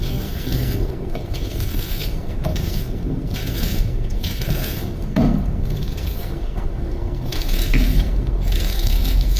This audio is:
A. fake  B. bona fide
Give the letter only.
A